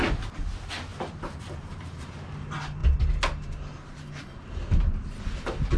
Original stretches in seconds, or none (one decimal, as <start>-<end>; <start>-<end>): 0.0-0.9; 2.1-5.8